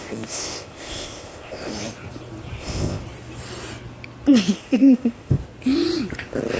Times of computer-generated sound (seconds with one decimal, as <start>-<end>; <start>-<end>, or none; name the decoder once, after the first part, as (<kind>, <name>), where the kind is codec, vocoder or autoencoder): 0.0-1.7 (codec, ZipCodec); 2.6-3.0; 4.5-5.4